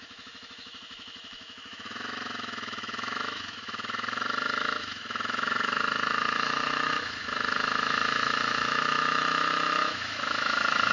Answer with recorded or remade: remade